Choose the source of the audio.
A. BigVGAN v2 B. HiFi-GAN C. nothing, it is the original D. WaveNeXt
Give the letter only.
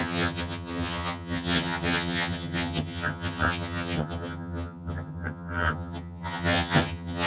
B